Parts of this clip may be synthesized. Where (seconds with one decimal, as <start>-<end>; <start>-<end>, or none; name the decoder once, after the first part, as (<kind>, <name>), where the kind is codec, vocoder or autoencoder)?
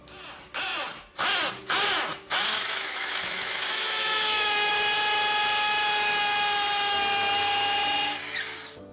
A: 2.1-4.7 (autoencoder, DAC-VAE)